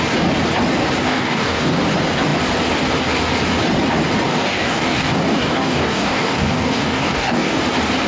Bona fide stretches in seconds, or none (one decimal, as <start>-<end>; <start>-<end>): 0.0-1.1; 1.8-4.3; 7.6-8.1